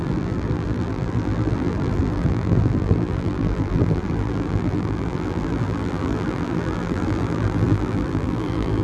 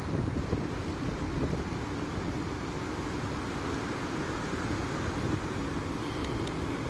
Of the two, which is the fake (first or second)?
first